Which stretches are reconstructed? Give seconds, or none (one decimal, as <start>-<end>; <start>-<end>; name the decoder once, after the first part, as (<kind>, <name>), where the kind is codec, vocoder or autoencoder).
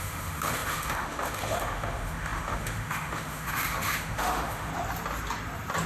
0.0-4.7 (autoencoder, DAC-VAE)